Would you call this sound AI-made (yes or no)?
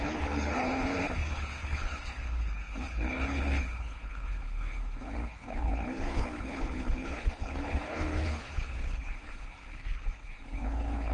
yes